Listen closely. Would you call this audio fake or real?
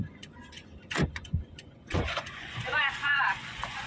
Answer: fake